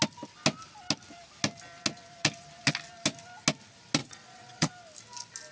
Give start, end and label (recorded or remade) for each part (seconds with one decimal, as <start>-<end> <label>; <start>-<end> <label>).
0.0-4.0 recorded; 4.0-4.7 remade; 4.7-5.5 recorded